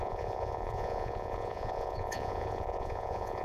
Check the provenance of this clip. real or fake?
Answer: fake